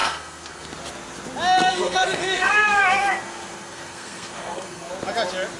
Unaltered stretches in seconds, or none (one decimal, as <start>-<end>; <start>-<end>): 0.7-1.6; 4.9-5.6